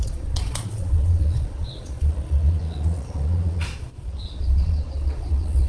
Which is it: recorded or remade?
remade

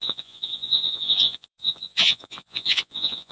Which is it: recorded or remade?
remade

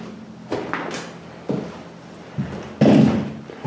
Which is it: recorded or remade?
recorded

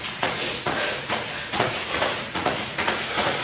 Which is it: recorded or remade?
remade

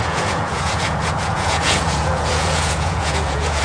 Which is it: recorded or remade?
remade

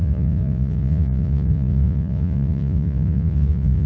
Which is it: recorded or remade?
remade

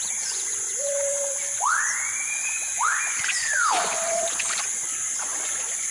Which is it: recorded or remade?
remade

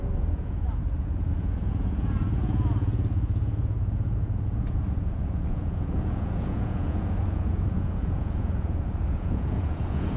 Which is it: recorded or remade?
remade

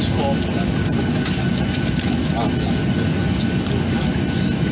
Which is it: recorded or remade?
recorded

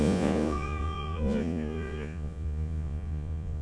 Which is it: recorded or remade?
remade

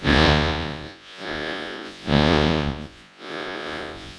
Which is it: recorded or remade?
remade